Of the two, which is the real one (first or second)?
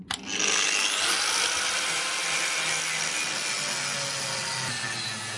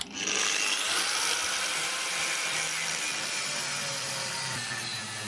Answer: first